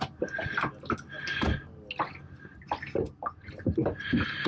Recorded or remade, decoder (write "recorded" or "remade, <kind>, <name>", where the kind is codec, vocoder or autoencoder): recorded